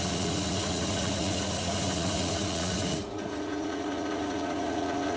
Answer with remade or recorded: remade